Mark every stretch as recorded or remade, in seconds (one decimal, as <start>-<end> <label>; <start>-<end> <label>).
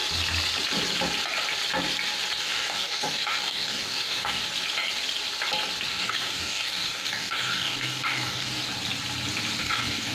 0.0-2.4 recorded; 2.4-4.4 remade; 4.4-5.9 recorded; 5.9-8.6 remade; 8.6-9.6 recorded; 9.6-10.1 remade